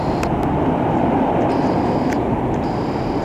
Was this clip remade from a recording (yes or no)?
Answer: yes